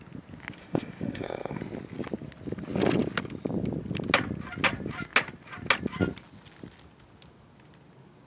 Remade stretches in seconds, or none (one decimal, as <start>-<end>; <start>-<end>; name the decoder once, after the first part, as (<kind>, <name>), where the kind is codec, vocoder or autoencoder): 0.6-1.6 (autoencoder, DAC-VAE)